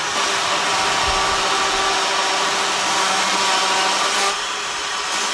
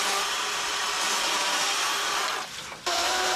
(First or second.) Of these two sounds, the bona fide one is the first